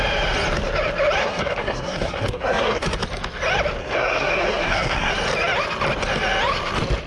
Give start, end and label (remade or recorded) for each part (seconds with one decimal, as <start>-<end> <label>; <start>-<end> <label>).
0.0-1.2 recorded; 1.2-2.9 remade; 2.9-3.8 recorded; 3.8-5.1 remade; 5.1-7.1 recorded